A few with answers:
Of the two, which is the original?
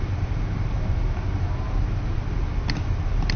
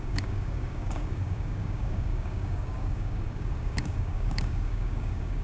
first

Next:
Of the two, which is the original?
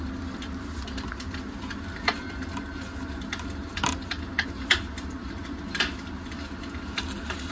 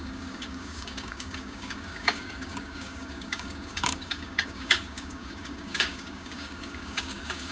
first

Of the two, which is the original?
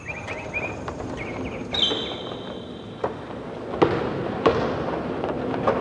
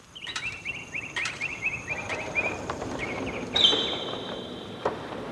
first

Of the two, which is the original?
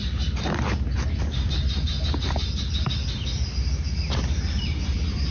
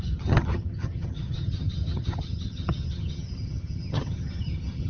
first